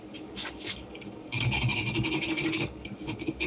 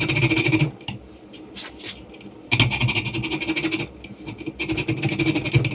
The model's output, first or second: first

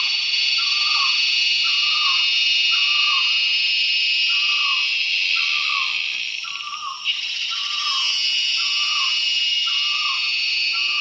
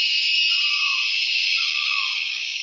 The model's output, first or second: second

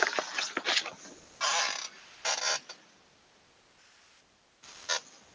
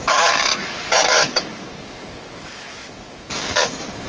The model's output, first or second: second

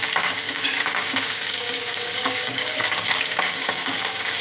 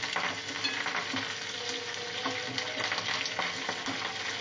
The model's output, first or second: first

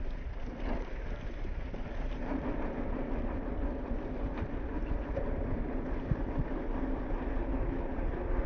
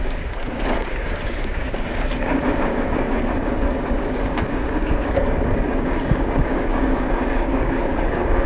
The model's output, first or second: second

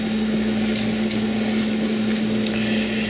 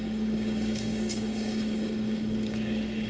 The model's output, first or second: second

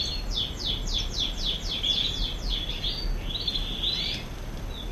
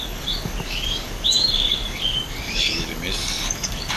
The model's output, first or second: second